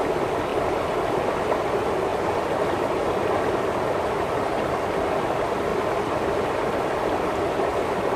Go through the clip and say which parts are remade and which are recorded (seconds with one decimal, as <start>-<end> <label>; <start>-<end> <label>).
0.0-8.2 recorded